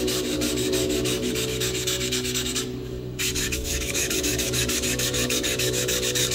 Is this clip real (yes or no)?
no